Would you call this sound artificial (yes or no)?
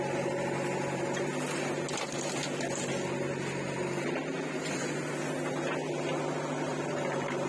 no